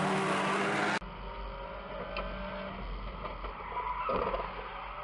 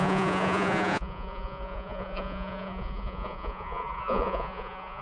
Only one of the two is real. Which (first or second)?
first